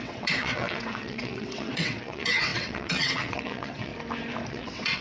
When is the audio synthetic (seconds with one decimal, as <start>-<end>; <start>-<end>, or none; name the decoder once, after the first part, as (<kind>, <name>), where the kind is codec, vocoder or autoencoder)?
0.0-3.9 (vocoder, WaveNeXt); 4.5-5.0